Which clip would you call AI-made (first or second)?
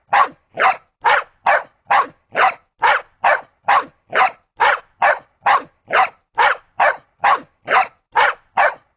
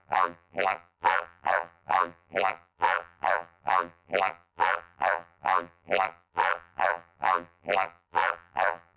second